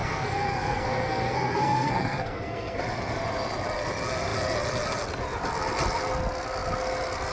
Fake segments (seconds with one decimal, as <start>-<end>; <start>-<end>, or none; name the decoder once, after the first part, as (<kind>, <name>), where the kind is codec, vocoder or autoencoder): 0.0-2.8 (codec, SNAC)